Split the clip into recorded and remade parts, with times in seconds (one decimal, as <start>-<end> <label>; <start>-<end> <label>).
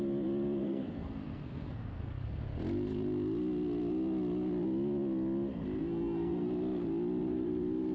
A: 0.0-0.6 recorded; 0.6-2.4 remade; 2.4-5.8 recorded; 5.8-6.5 remade; 6.5-7.9 recorded